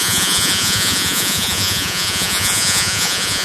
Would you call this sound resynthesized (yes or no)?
yes